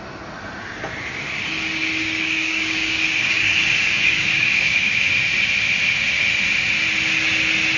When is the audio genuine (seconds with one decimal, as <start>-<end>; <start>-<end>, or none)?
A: 0.0-2.0; 5.1-7.8